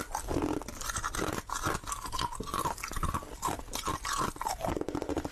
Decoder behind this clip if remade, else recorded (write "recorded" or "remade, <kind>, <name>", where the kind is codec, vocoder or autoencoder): recorded